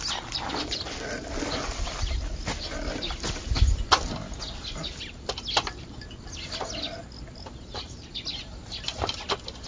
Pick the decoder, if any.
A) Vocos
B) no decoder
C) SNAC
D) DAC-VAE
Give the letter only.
B